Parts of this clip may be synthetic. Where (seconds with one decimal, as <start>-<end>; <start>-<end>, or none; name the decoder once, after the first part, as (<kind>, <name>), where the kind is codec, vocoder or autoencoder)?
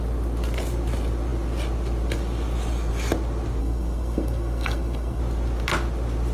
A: 3.6-5.2 (codec, SNAC)